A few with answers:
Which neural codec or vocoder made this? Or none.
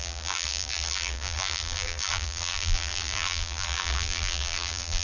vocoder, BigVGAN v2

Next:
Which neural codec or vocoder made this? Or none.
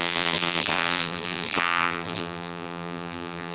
vocoder, BigVGAN v2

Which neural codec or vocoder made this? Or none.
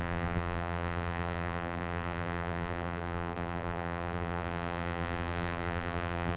vocoder, BigVGAN v2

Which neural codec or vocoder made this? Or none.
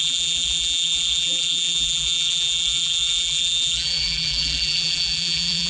vocoder, BigVGAN v2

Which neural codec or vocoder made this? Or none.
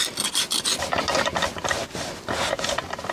none